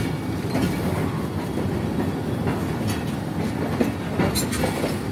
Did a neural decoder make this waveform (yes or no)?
no